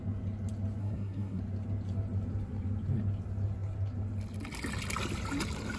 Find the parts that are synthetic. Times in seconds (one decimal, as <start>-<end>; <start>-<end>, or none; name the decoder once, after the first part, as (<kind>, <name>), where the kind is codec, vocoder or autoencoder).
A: 0.8-1.4 (codec, SNAC)

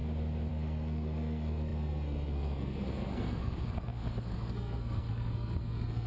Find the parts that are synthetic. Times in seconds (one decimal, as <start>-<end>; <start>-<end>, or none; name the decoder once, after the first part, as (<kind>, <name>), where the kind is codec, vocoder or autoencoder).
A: 0.5-6.1 (codec, SNAC)

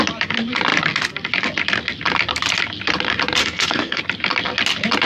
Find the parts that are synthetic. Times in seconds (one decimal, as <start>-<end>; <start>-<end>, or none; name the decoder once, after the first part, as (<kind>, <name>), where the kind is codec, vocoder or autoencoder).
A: 3.4-4.0 (codec, SNAC)

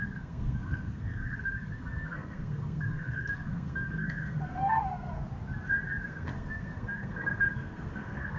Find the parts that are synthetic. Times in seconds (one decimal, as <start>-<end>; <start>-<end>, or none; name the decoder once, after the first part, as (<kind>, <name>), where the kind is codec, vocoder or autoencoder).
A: 0.0-5.2 (codec, SNAC); 6.0-8.4

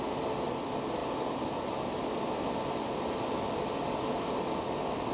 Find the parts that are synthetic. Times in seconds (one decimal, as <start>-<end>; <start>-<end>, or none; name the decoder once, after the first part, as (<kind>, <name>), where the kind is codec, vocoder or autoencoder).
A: none

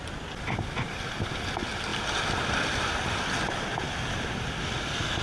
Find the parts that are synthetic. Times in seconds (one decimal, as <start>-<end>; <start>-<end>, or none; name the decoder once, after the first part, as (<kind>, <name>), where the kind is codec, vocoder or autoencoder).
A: none